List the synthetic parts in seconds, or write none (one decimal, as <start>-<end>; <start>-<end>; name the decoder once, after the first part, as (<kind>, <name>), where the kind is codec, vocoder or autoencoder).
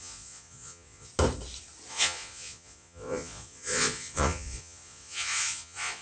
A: 0.0-1.1 (vocoder, Vocos); 1.9-6.0